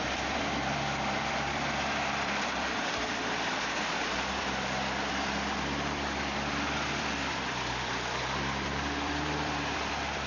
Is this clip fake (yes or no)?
yes